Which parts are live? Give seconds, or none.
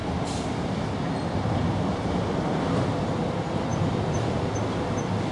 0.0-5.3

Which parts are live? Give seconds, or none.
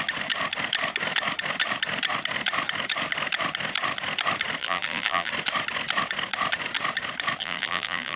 0.0-4.6; 5.3-7.4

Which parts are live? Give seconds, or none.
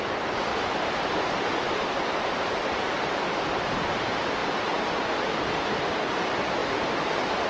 0.0-0.5; 3.8-6.6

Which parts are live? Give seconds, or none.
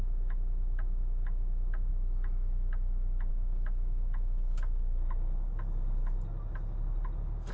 0.0-7.5